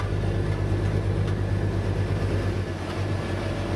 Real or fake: real